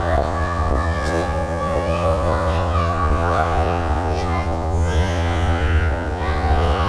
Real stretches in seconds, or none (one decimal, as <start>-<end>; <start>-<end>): none

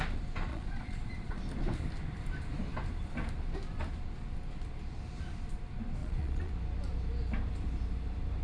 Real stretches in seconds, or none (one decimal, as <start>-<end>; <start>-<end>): 0.0-0.5; 1.4-6.0; 6.5-8.4

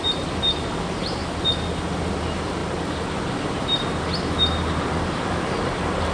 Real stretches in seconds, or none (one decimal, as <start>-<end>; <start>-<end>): 1.2-2.1; 2.6-5.0

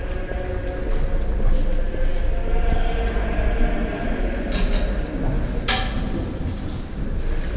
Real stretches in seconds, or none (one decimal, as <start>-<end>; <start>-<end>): 0.0-7.6

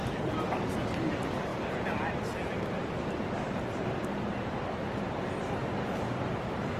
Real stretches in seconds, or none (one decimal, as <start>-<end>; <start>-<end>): 0.0-2.8; 4.5-5.6; 6.1-6.8